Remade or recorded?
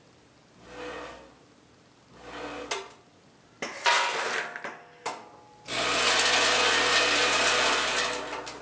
recorded